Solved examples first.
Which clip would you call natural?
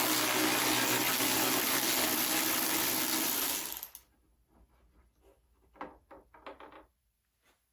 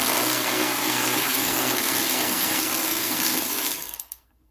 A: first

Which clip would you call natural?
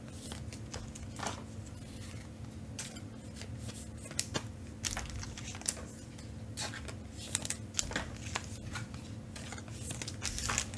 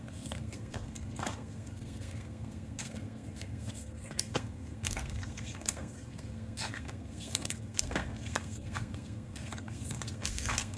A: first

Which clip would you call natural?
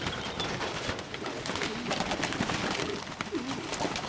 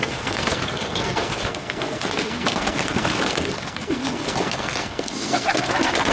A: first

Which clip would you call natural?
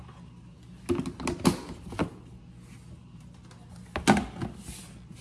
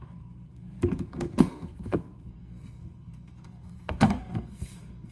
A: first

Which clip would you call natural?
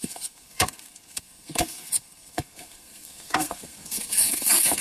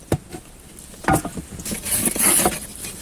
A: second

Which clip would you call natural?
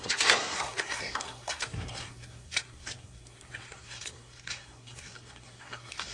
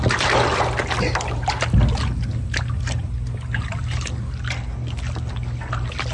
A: second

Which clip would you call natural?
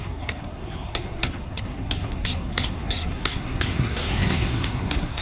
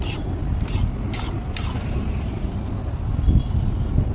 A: second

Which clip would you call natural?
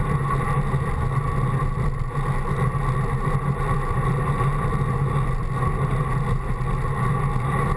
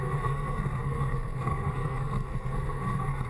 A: first